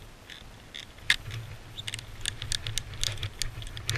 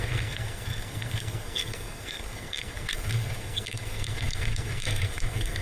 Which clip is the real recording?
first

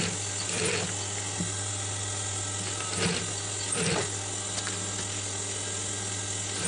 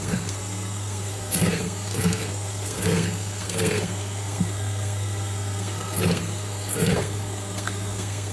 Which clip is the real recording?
first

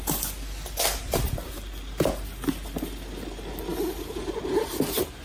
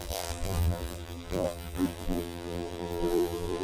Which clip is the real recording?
first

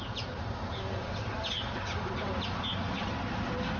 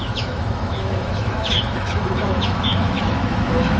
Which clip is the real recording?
first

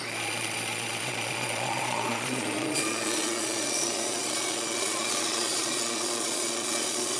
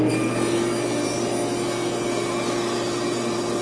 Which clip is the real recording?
second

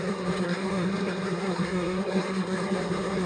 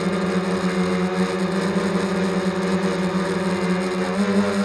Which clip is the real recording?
second